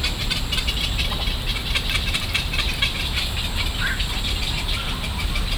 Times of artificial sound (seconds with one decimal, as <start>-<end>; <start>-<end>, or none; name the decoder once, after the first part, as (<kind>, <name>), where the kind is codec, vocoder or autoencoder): 1.5-4.9 (vocoder, BigVGAN v2)